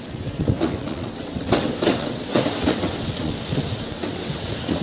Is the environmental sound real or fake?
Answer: fake